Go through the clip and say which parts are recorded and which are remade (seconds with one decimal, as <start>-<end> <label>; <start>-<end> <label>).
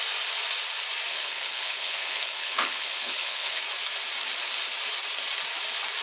0.0-1.1 recorded; 1.1-3.6 remade; 3.6-6.0 recorded